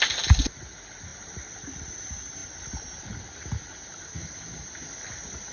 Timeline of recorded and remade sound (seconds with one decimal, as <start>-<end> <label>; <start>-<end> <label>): 0.0-5.5 recorded